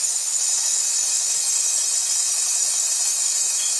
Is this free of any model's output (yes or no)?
no